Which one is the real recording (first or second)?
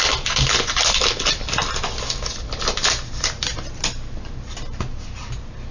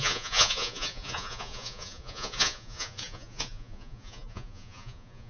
first